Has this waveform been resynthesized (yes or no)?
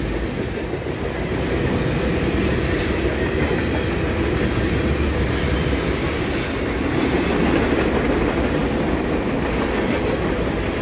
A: no